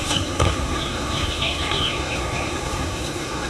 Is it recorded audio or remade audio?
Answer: remade